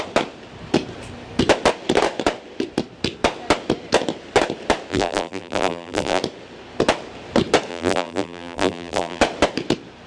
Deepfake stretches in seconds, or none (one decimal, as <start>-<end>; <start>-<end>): 4.9-6.2; 7.7-9.2